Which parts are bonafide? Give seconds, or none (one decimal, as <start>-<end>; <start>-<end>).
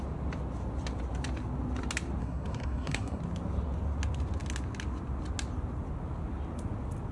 0.0-2.2; 3.2-7.1